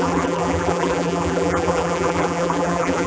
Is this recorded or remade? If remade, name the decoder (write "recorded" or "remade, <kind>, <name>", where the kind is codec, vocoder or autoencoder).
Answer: remade, vocoder, BigVGAN v2